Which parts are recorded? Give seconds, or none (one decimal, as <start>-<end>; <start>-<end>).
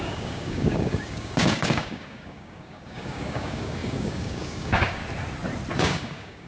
5.0-5.8